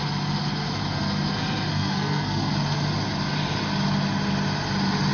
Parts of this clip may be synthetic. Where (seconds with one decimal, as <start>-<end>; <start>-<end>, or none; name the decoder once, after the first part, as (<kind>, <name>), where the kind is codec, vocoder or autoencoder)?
1.7-2.5 (codec, SNAC)